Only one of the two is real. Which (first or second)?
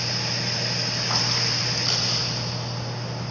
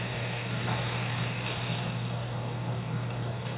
first